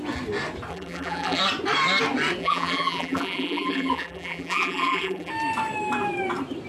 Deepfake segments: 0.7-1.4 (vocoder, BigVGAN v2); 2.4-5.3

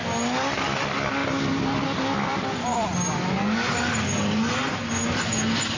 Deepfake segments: none